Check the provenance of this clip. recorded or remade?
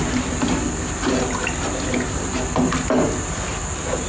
recorded